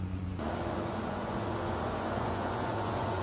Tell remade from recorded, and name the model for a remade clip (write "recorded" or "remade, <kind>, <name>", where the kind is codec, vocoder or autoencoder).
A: remade, vocoder, Vocos